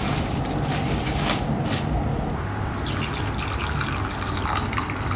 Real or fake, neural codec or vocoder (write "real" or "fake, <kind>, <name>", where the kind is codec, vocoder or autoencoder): real